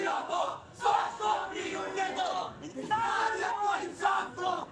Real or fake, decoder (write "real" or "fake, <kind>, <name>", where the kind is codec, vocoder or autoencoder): fake, codec, SNAC